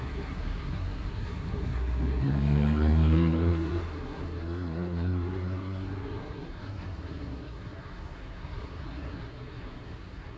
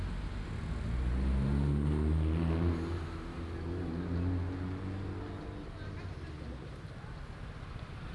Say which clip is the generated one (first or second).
first